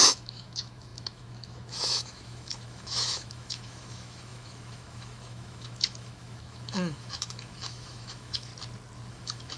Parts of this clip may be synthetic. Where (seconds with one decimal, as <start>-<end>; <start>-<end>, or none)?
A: 0.0-8.5; 9.1-9.6

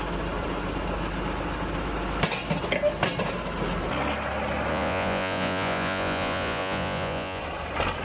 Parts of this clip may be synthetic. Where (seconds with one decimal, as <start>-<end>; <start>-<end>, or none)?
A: 4.7-7.4

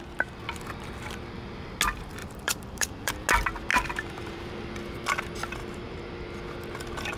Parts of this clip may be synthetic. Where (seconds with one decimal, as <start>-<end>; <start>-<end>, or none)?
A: 2.2-3.1; 3.7-4.7; 5.6-6.2

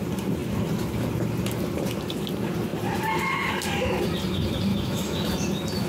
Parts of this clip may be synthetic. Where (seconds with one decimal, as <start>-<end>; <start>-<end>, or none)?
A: 4.7-5.3

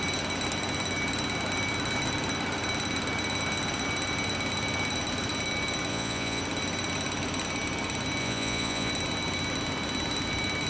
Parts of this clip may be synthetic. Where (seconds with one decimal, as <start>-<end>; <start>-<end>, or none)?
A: 5.9-6.4; 8.2-8.9

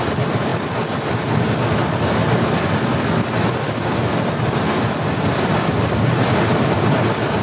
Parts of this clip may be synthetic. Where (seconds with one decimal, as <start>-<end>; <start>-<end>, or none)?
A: none